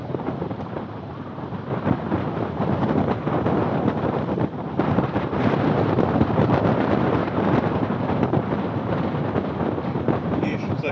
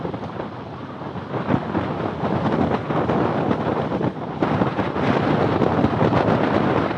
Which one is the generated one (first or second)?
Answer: first